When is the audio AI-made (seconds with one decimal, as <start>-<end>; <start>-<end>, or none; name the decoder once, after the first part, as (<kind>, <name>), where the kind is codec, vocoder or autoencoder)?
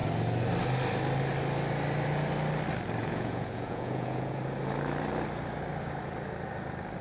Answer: 3.0-4.4 (vocoder, Vocos)